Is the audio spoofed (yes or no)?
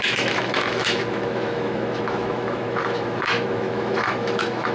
yes